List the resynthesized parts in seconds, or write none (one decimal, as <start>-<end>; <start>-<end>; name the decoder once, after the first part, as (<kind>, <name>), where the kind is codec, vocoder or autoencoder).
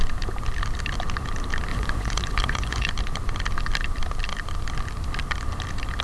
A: 1.7-2.9 (vocoder, Vocos)